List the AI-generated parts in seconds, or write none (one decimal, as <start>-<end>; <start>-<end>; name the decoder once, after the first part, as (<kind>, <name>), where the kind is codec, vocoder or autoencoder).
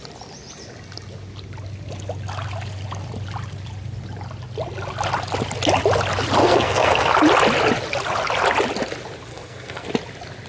6.4-7.1 (codec, SNAC); 9.3-9.9